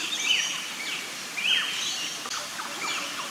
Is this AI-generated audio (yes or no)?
no